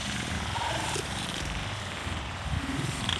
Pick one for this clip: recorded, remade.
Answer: remade